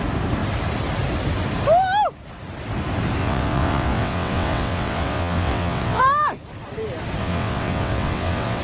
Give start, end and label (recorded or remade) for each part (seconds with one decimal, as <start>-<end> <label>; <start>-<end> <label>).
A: 0.0-3.2 recorded; 3.2-6.0 remade; 6.0-7.2 recorded; 7.2-8.6 remade